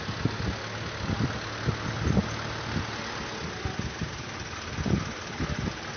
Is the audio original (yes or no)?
yes